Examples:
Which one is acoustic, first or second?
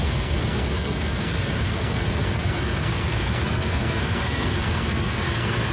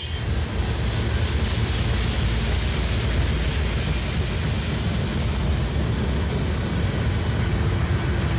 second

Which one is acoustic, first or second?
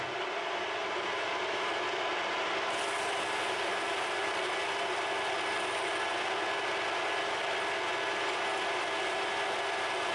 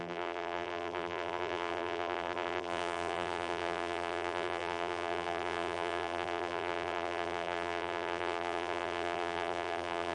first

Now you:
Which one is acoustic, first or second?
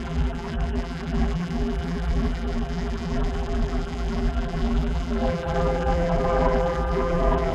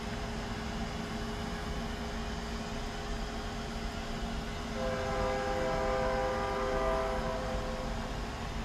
second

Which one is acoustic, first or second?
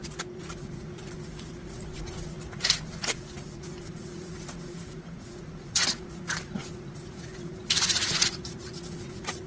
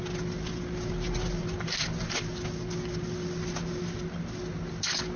second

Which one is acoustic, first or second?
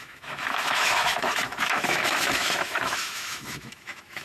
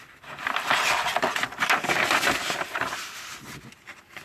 second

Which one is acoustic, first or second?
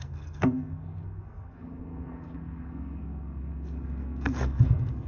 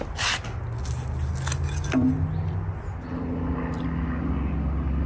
second